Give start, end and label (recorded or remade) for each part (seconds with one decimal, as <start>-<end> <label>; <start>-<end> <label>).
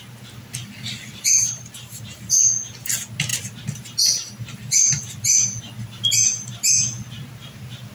0.0-1.4 recorded; 1.4-2.3 remade; 2.3-7.9 recorded